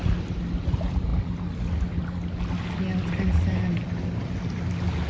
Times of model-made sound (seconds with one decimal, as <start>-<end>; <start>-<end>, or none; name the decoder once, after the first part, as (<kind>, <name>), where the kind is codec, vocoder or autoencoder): none